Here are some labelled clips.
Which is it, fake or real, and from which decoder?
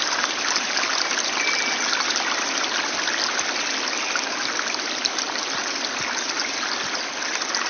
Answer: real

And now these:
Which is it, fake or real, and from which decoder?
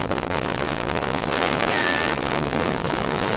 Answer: fake, vocoder, Vocos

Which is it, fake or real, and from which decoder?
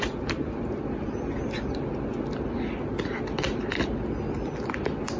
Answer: real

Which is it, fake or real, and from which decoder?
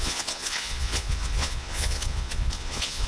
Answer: fake, vocoder, Vocos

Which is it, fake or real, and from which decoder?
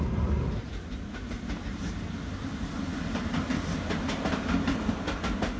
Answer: real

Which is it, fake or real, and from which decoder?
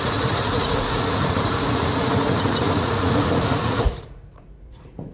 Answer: fake, vocoder, Vocos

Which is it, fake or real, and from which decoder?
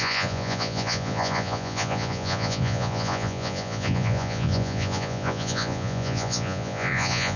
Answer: fake, vocoder, Vocos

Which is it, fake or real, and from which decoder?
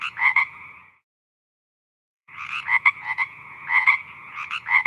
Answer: fake, vocoder, Vocos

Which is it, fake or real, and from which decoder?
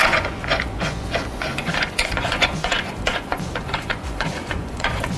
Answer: fake, vocoder, Vocos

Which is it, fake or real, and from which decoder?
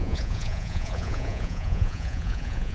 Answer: fake, vocoder, Vocos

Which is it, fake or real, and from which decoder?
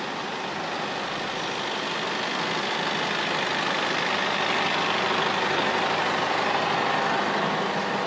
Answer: real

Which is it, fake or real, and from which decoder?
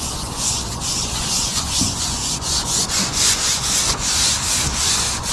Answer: fake, vocoder, Vocos